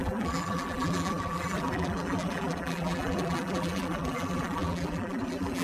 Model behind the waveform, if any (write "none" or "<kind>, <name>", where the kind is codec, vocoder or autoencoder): vocoder, BigVGAN v2